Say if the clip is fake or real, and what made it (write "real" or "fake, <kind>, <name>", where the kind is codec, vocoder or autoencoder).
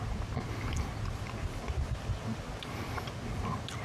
fake, vocoder, BigVGAN v2